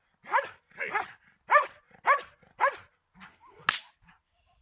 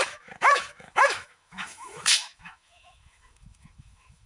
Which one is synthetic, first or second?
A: second